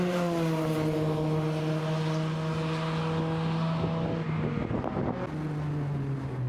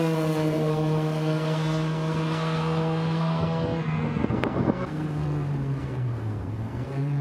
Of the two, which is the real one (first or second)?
first